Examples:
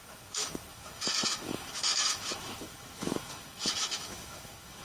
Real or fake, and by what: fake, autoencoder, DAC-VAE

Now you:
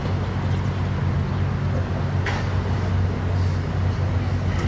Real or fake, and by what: real